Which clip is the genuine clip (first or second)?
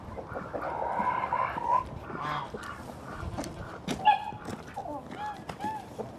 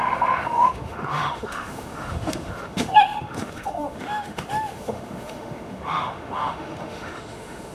first